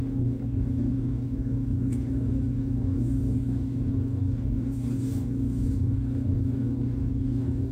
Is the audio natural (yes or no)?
no